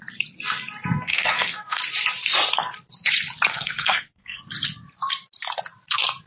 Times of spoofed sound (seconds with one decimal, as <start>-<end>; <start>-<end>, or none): 1.1-1.8; 3.5-4.4